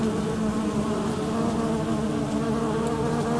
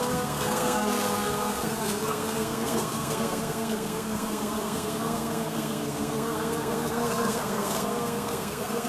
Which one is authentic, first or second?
first